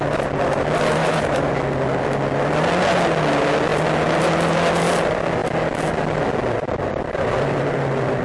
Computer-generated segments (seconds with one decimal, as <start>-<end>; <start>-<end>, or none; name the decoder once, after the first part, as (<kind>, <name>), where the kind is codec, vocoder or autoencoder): 1.0-1.5 (vocoder, BigVGAN v2)